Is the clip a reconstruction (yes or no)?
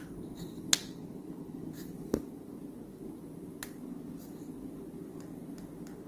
no